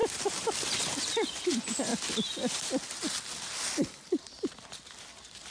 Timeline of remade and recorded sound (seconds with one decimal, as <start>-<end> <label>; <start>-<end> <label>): 0.0-1.2 recorded; 1.2-1.9 remade; 1.9-5.5 recorded